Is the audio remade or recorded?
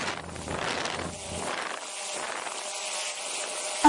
recorded